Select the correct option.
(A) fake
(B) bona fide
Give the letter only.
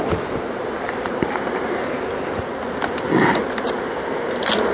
B